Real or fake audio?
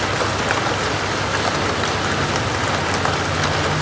real